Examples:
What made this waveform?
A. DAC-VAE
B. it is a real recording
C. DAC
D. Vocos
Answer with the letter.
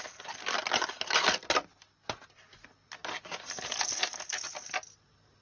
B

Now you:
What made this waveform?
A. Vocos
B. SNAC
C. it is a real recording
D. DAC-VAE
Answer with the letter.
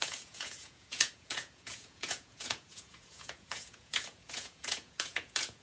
A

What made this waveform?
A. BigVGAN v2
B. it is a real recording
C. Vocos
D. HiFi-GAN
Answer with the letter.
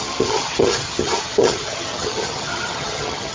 D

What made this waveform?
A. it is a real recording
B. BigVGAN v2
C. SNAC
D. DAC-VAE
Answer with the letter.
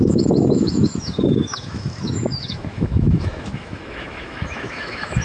D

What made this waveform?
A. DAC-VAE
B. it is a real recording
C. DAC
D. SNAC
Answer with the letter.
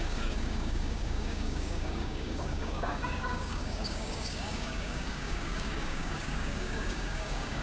C